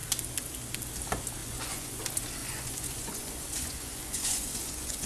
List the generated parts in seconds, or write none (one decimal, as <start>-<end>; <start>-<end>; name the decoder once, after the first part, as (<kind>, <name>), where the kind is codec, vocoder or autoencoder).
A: 1.4-2.0 (vocoder, Vocos); 2.4-5.1